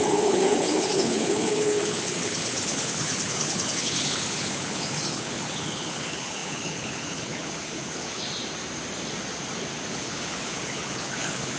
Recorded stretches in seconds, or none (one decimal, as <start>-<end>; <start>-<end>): 8.2-9.9